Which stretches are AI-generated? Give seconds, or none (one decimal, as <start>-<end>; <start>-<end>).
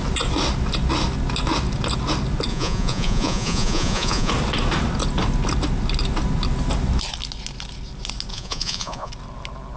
2.5-4.3; 8.3-9.1